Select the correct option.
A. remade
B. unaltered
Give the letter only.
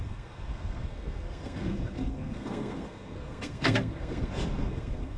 A